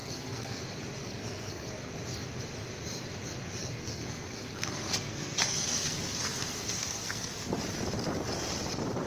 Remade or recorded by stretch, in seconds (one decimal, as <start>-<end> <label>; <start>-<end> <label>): 0.0-0.6 remade; 0.6-1.0 recorded; 1.0-1.7 remade; 1.7-3.6 recorded; 3.6-7.6 remade; 7.6-9.1 recorded